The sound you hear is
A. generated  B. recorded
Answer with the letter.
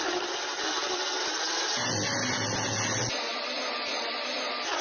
B